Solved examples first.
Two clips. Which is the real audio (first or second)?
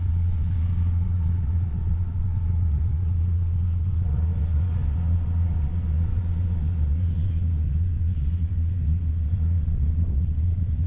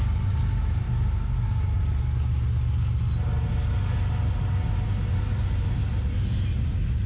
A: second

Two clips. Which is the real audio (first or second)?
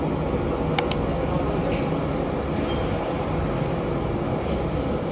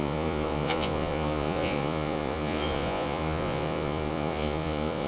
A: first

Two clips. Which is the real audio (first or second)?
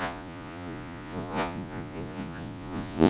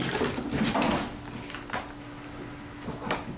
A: second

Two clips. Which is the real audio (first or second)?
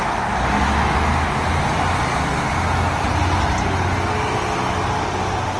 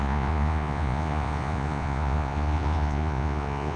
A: first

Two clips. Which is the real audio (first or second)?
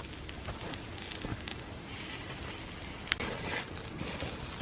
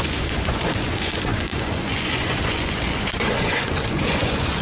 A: first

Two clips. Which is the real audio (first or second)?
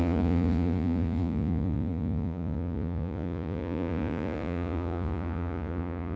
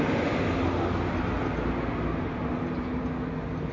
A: second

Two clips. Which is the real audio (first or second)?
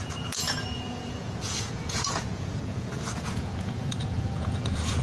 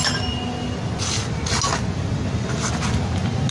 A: second